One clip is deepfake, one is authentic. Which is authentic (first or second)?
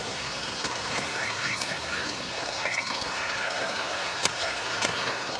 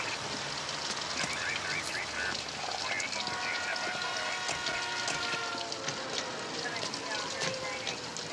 second